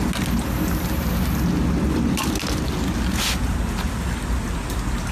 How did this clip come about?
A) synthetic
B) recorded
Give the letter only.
B